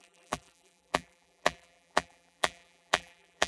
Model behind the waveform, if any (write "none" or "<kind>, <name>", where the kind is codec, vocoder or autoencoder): vocoder, BigVGAN v2